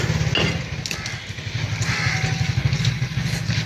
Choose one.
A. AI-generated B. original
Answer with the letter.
B